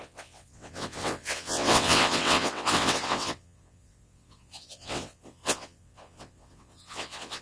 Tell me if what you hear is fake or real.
fake